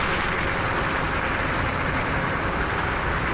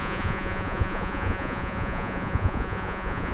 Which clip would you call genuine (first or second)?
first